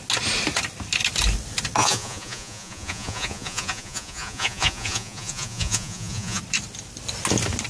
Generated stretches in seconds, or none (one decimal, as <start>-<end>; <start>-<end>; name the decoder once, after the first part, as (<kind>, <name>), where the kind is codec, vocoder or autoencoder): 1.8-6.4 (vocoder, Vocos)

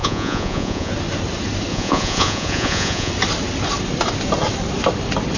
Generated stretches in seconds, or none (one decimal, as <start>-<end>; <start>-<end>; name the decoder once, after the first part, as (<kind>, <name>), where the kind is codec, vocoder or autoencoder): 0.0-0.9 (vocoder, Vocos); 1.7-3.1

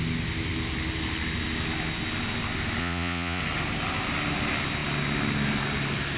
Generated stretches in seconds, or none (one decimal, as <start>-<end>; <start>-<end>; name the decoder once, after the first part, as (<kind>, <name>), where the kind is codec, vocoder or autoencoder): 2.8-3.4 (vocoder, Vocos)

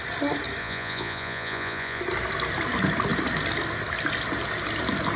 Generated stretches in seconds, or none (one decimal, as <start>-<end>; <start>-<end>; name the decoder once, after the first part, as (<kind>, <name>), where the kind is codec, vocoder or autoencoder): 0.6-2.0 (vocoder, Vocos)

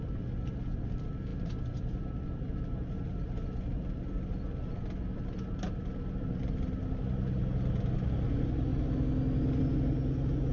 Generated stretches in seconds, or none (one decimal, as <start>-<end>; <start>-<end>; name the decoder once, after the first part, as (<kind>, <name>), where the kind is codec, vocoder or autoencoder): none

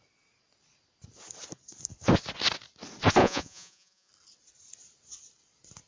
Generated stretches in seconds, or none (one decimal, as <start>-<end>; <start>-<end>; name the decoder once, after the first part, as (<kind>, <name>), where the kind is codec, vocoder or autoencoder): 3.2-4.1 (vocoder, Vocos)